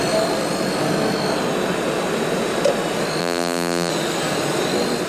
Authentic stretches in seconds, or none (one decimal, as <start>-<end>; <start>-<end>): 0.0-3.2; 3.9-5.1